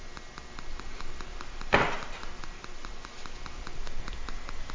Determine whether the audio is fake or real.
real